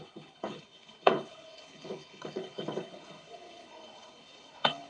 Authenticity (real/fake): fake